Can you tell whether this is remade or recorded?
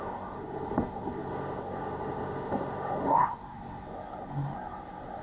remade